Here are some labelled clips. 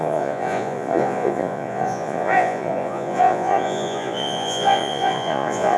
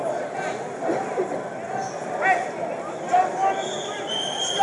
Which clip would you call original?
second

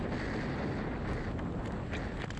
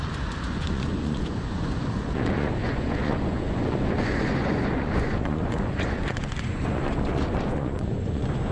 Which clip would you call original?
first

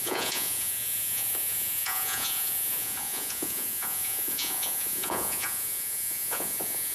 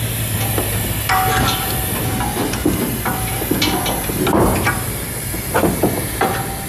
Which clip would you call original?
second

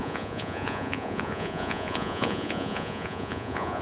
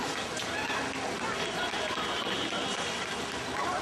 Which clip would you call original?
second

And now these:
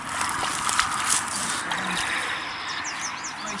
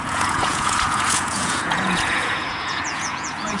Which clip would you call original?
first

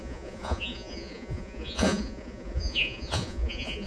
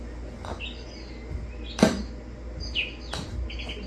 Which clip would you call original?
second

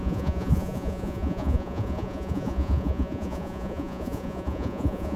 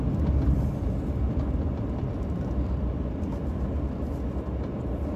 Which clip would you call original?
second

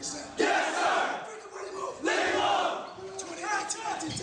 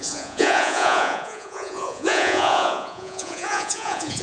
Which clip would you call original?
first